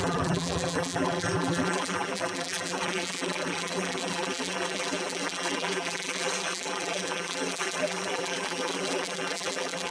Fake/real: fake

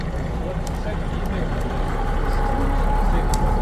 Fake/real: real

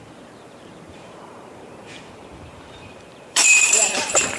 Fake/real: fake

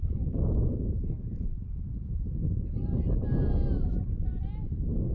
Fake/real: fake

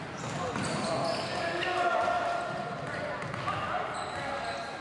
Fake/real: real